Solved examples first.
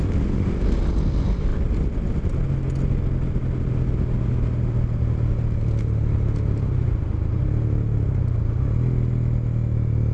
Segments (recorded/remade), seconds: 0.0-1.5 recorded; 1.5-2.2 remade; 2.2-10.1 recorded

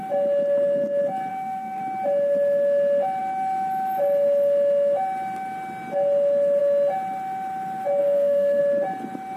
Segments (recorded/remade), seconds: 0.0-1.3 recorded; 1.3-1.8 remade; 1.8-8.0 recorded; 8.0-8.6 remade; 8.6-9.4 recorded

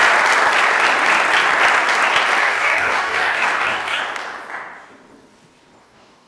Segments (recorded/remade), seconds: 0.0-2.4 recorded; 2.4-4.0 remade; 4.0-5.8 recorded; 5.8-6.3 remade

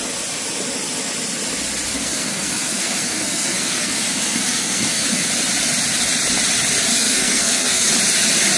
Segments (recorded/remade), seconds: 0.0-1.9 recorded; 1.9-5.3 remade; 5.3-6.9 recorded; 6.9-7.9 remade; 7.9-8.6 recorded